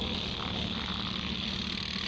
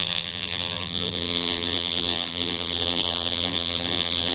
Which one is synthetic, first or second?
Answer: second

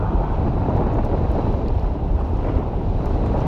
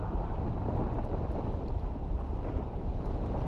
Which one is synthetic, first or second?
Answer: first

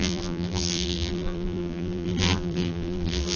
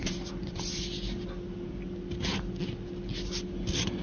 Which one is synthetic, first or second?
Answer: first